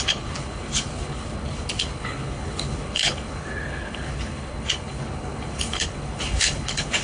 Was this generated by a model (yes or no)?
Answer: yes